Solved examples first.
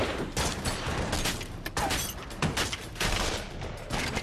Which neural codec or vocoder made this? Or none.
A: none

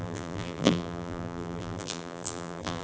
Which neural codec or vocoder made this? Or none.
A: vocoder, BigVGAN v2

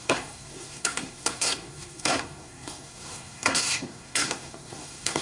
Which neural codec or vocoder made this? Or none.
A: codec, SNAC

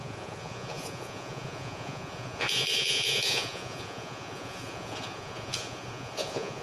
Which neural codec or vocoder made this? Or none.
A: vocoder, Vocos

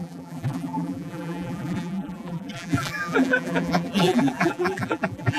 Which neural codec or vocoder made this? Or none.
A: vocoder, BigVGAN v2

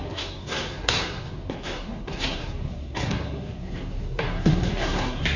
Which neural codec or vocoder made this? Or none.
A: codec, SNAC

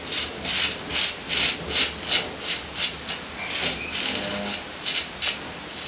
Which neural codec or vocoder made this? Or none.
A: none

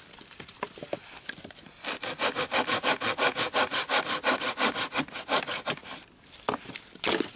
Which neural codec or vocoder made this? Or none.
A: none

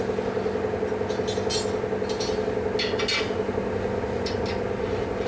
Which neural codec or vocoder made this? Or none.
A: none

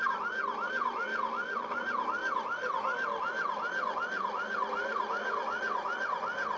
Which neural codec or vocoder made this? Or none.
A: none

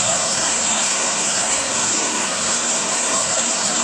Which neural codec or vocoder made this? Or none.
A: codec, SNAC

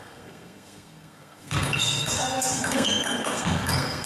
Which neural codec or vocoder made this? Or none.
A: codec, SNAC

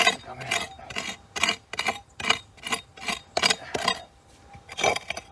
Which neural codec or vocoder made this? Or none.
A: none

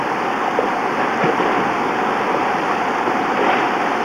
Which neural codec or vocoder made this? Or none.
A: none